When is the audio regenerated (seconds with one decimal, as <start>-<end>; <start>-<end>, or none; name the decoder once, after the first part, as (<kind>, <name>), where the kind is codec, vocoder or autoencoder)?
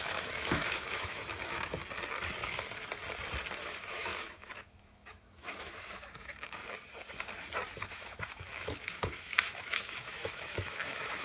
0.0-1.8 (autoencoder, DAC-VAE); 3.6-6.6; 7.9-11.2